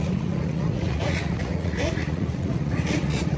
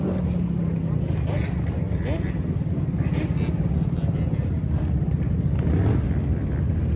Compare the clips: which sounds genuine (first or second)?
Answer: second